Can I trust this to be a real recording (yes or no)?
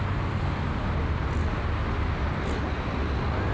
yes